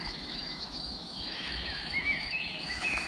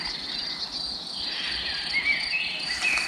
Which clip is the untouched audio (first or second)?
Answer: second